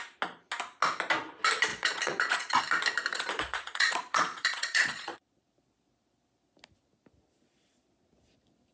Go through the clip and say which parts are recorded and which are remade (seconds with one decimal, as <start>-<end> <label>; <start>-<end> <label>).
0.0-1.7 recorded; 1.7-2.6 remade; 2.6-3.1 recorded; 3.1-5.5 remade; 5.5-8.7 recorded